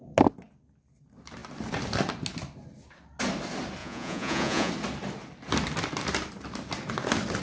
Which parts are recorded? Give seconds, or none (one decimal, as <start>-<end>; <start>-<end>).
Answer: 0.0-3.8; 4.7-7.4